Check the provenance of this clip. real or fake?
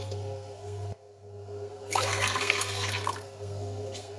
fake